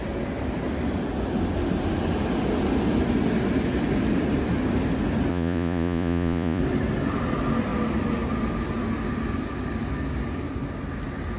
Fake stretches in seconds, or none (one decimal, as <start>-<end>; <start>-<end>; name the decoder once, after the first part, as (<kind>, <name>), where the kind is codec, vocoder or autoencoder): 5.3-6.6 (vocoder, Vocos)